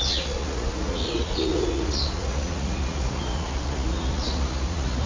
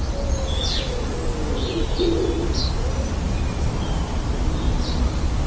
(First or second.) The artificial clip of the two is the first